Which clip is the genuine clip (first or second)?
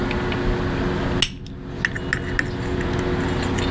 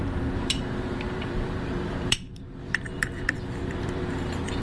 first